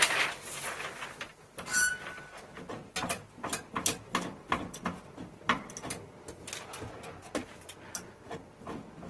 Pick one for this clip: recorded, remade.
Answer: recorded